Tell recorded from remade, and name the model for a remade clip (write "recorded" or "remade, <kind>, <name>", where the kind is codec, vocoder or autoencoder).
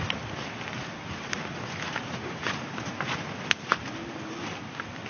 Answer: recorded